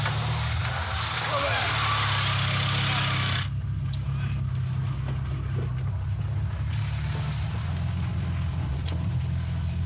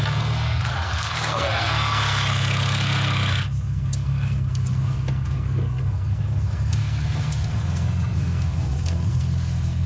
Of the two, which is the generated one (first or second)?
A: second